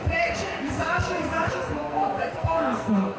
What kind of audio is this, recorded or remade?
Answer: remade